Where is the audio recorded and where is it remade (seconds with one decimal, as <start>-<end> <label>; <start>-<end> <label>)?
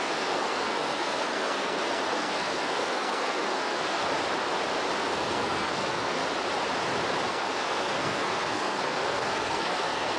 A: 0.0-4.0 remade; 4.0-5.0 recorded; 5.0-6.2 remade; 6.2-7.3 recorded; 7.3-10.2 remade